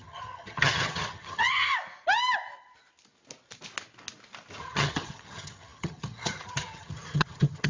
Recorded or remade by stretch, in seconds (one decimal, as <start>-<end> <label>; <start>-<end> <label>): 0.0-1.7 remade; 1.7-4.6 recorded; 4.6-7.7 remade